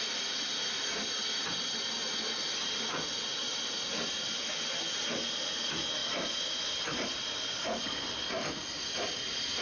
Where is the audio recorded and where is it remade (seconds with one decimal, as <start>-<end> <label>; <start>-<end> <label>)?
0.0-9.6 recorded